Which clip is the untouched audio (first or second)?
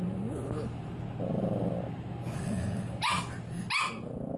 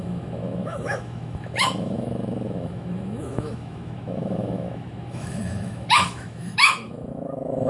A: first